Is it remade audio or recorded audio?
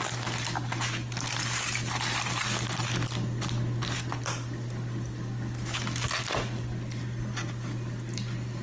recorded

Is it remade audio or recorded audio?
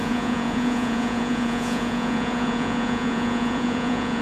remade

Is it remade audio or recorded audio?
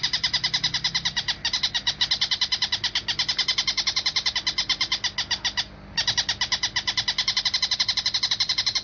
recorded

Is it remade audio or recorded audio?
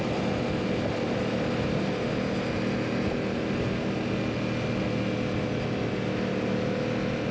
recorded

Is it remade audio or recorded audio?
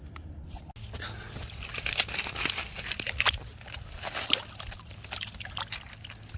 recorded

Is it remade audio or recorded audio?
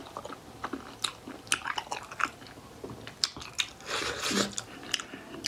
recorded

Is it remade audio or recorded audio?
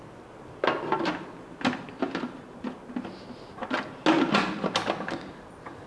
recorded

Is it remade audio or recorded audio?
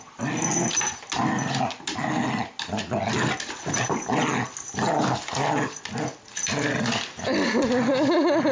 recorded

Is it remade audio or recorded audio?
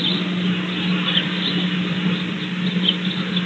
recorded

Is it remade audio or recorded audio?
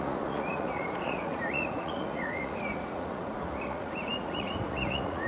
remade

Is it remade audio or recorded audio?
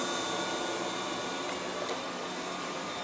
recorded